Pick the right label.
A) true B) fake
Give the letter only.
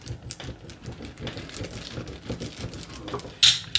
A